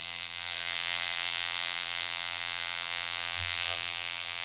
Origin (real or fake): fake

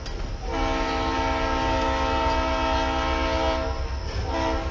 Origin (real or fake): real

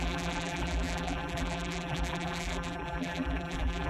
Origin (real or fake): fake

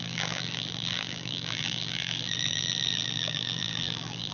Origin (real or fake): fake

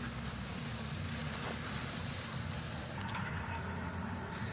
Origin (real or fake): fake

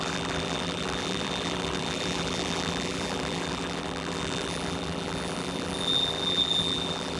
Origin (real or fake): fake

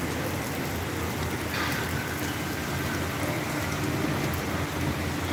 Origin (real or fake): real